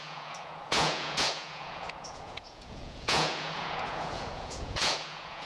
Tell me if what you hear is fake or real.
fake